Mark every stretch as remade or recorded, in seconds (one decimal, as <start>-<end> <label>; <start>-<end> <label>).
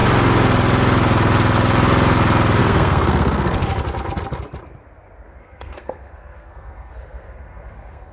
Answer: 0.0-2.6 recorded; 2.6-3.6 remade; 3.6-5.4 recorded; 5.4-8.1 remade